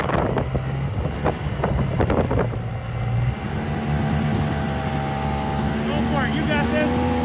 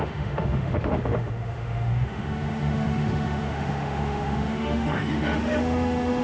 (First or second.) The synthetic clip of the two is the second